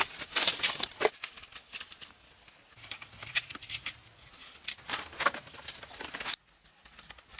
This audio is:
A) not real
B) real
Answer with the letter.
B